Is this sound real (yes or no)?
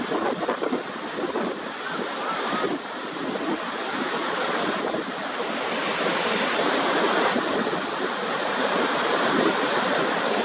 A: yes